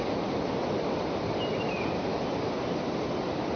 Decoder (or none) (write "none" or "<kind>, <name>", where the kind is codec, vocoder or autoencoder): vocoder, BigVGAN v2